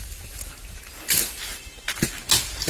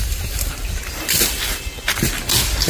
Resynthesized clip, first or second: second